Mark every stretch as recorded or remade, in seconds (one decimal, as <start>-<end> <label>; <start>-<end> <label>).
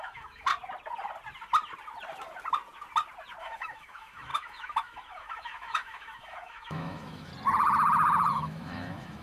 0.0-0.5 remade; 0.5-3.4 recorded; 3.4-7.3 remade; 7.3-8.3 recorded; 8.3-9.2 remade